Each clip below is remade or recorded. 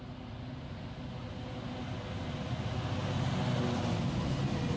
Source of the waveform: recorded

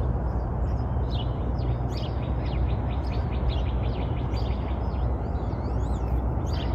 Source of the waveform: recorded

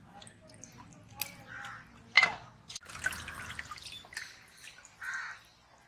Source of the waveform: recorded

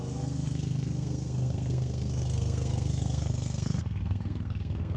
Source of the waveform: remade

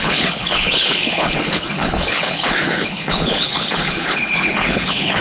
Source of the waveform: remade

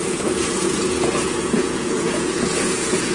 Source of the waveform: remade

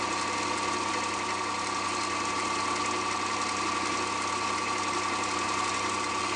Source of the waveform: recorded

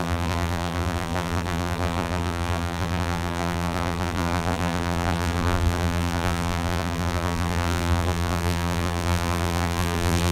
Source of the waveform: remade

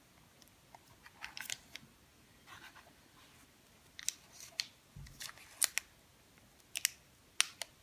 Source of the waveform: recorded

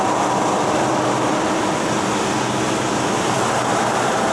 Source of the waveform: recorded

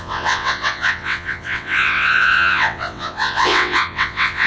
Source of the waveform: remade